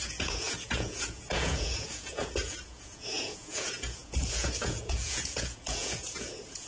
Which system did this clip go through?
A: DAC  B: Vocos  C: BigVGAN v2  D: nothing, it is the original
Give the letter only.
B